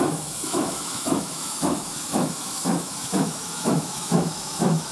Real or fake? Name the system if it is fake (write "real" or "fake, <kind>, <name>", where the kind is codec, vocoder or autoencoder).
fake, autoencoder, DAC-VAE